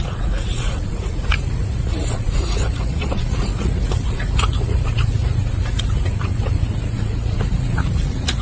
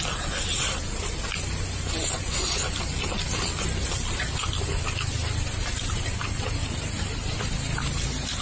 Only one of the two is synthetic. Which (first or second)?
first